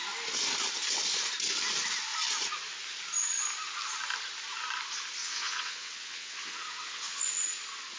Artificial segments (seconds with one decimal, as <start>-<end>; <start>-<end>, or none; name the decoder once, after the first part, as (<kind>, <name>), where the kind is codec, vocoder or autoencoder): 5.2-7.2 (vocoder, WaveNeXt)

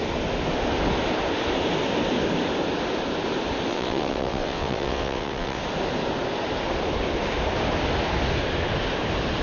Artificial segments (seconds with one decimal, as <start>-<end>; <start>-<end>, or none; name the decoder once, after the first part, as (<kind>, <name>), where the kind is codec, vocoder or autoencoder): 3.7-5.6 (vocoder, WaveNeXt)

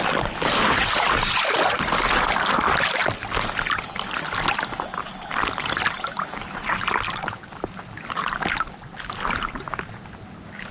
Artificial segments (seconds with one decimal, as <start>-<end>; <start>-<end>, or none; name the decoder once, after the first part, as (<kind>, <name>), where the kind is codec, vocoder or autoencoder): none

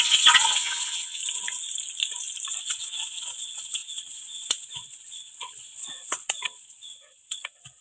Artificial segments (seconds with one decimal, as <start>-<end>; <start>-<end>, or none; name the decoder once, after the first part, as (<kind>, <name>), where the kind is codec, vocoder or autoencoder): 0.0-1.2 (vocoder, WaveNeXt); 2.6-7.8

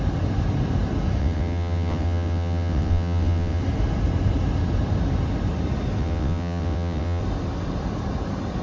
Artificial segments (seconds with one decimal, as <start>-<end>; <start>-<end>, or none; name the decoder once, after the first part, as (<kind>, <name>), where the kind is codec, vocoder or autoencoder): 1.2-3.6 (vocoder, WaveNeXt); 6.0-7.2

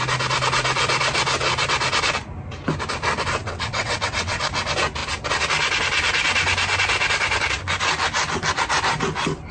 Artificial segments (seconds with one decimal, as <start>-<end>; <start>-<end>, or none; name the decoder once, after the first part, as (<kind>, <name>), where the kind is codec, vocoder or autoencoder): 3.4-4.4 (vocoder, WaveNeXt)

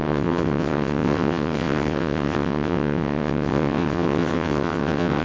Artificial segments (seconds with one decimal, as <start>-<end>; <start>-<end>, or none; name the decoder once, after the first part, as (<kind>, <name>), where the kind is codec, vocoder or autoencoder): 0.0-5.2 (vocoder, WaveNeXt)

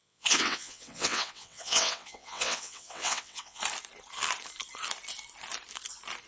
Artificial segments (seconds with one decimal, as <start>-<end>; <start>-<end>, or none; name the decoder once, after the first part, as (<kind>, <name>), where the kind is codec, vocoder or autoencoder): 0.0-3.6 (vocoder, WaveNeXt)